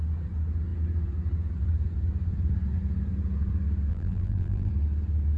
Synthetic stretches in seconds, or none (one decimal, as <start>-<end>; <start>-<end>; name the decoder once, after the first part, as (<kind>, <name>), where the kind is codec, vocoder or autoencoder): 3.9-4.7 (vocoder, BigVGAN v2)